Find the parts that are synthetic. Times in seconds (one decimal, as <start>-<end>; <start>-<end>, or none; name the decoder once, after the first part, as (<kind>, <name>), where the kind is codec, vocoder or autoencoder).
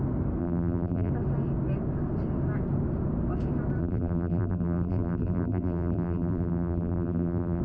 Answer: 0.4-1.1 (vocoder, BigVGAN v2); 3.8-7.6